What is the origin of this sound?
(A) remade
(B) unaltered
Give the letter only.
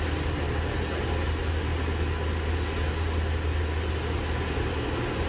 B